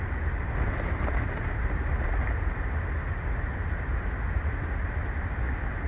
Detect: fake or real real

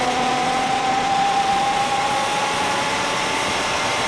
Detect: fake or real fake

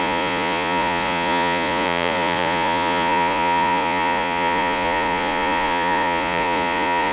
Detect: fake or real fake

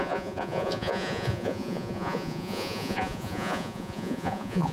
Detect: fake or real fake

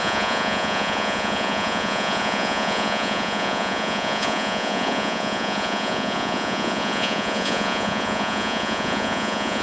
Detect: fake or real fake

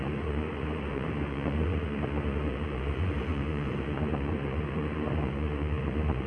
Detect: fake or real fake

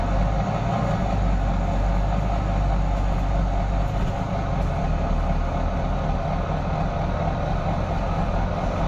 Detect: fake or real real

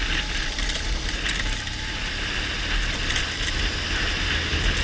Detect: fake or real real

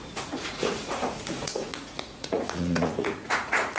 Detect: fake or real fake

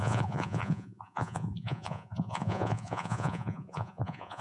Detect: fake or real fake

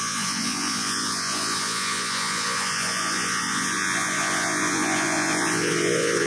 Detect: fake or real fake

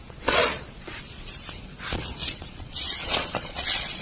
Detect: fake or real fake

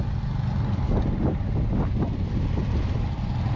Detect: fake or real real